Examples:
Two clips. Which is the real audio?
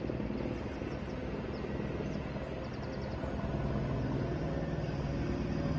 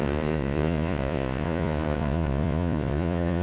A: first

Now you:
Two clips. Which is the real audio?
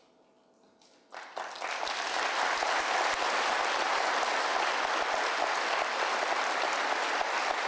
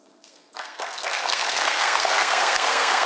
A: first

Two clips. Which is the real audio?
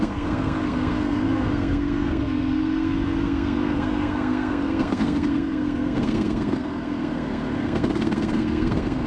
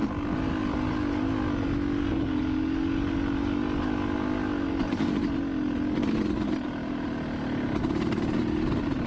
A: second